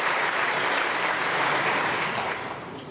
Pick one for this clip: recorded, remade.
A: remade